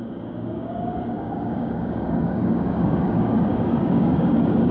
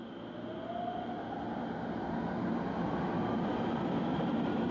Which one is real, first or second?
second